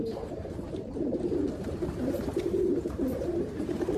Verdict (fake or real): fake